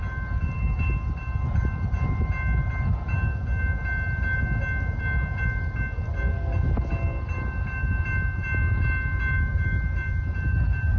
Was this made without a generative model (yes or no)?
yes